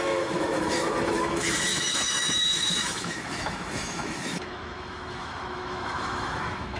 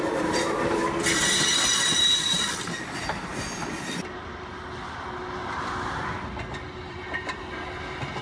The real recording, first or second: second